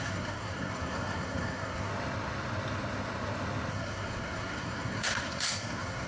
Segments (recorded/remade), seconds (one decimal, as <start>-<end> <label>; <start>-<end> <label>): 0.0-1.9 remade; 1.9-3.7 recorded; 3.7-6.1 remade